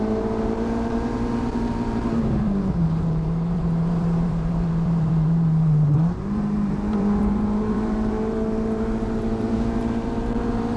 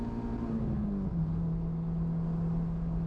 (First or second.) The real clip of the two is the second